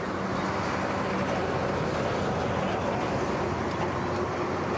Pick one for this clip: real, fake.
real